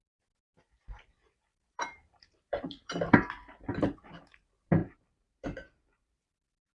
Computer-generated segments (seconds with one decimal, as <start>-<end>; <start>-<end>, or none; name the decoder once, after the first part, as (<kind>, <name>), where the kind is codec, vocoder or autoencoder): 1.5-3.3 (vocoder, BigVGAN v2); 4.8-6.8